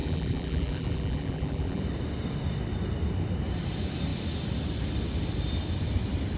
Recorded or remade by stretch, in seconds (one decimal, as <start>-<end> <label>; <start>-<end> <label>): 0.0-1.8 remade; 1.8-6.4 recorded